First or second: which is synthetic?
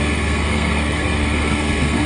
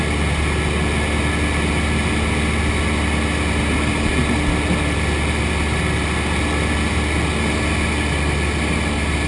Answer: first